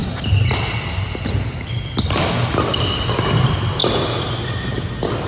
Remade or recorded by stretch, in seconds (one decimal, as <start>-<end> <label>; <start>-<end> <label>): 0.0-5.3 recorded